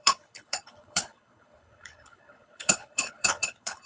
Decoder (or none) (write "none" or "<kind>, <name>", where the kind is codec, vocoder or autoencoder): codec, HILCodec